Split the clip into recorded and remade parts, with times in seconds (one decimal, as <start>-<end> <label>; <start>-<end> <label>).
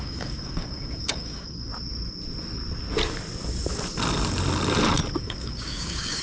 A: 0.0-1.7 remade; 1.7-5.2 recorded; 5.2-6.2 remade